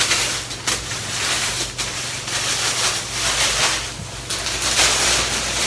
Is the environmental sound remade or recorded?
recorded